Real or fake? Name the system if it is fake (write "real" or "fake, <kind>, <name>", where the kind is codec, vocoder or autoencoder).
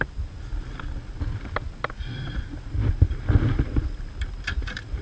real